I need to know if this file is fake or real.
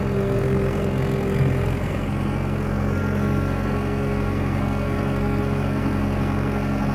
fake